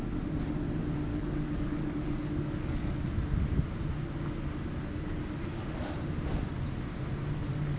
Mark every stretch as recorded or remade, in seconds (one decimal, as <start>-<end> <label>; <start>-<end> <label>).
0.0-1.1 recorded; 1.1-3.0 remade; 3.0-7.8 recorded